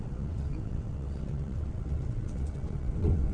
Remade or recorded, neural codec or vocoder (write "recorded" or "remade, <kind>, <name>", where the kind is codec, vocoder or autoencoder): remade, vocoder, WaveNeXt